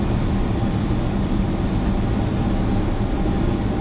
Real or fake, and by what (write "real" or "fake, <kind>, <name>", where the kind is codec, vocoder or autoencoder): real